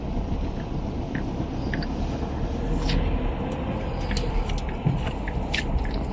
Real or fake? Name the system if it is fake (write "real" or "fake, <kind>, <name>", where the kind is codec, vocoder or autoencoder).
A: real